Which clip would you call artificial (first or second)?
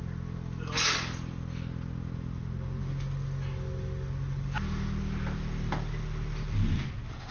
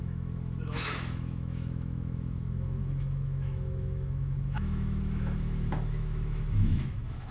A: second